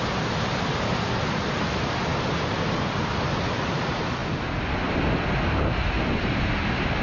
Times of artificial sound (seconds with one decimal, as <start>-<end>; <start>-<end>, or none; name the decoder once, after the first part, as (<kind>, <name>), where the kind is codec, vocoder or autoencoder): none